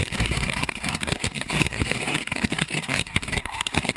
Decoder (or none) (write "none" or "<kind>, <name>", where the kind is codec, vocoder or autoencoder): codec, SNAC